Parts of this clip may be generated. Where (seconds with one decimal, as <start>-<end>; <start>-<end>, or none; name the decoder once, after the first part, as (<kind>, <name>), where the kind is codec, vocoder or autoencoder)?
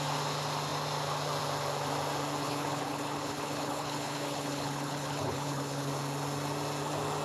2.4-5.9 (codec, HILCodec)